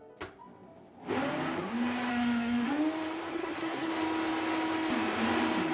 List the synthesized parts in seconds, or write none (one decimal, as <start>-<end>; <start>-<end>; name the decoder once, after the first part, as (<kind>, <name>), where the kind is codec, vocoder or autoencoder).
2.1-2.7 (codec, SNAC); 3.3-3.9